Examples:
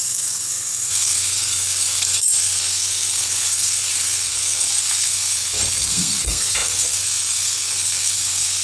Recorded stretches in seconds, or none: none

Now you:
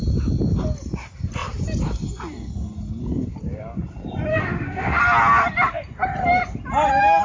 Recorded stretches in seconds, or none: 0.0-4.3; 5.0-7.2